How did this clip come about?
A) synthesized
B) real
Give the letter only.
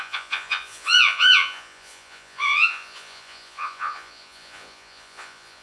A